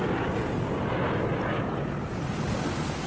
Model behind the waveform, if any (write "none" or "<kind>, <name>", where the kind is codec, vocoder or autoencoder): none